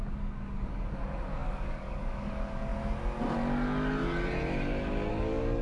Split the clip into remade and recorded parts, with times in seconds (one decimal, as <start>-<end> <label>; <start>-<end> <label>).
0.0-2.7 remade; 2.7-5.1 recorded; 5.1-5.6 remade